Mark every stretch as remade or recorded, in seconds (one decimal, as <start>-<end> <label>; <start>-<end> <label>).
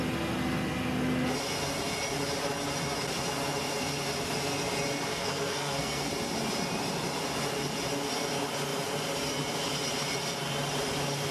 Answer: 0.0-5.1 recorded; 5.1-6.1 remade; 6.1-11.3 recorded